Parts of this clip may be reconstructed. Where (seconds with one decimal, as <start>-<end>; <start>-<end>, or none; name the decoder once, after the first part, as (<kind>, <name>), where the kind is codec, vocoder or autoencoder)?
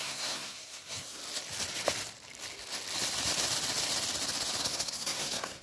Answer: 0.0-1.2 (codec, SNAC); 4.6-5.6